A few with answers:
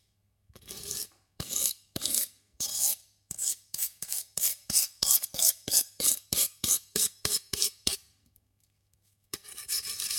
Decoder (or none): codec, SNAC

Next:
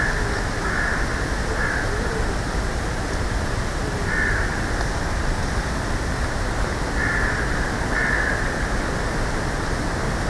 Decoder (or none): none